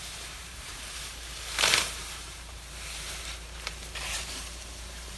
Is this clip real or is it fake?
fake